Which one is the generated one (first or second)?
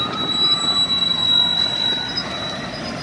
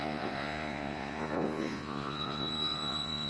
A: second